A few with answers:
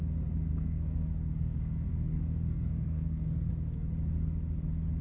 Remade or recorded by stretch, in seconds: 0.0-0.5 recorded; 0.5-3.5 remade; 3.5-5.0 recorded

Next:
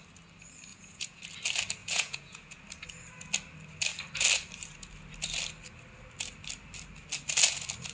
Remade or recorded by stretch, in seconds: 0.0-0.7 recorded; 0.7-1.2 remade; 1.2-1.8 recorded; 1.8-2.6 remade; 2.6-7.9 recorded

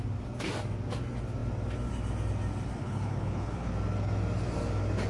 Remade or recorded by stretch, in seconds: 0.0-2.8 recorded; 2.8-3.7 remade; 3.7-5.1 recorded

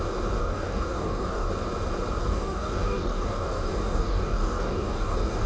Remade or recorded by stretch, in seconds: 0.0-0.4 recorded; 0.4-1.5 remade; 1.5-2.2 recorded; 2.2-5.5 remade

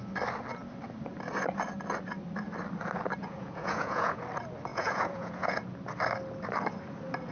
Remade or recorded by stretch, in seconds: 0.0-3.2 recorded; 3.2-4.2 remade; 4.2-4.7 recorded; 4.7-5.6 remade; 5.6-7.3 recorded

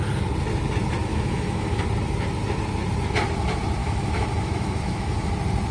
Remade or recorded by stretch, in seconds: 0.0-1.0 recorded; 1.0-1.8 remade; 1.8-3.8 recorded; 3.8-5.3 remade; 5.3-5.7 recorded